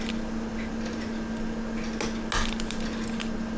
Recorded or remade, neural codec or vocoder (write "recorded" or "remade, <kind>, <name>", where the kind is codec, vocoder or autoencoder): recorded